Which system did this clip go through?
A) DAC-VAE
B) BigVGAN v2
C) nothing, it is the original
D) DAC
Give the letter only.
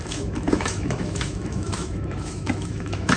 A